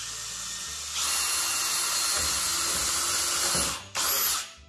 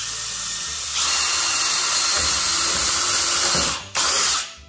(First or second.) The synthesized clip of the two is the second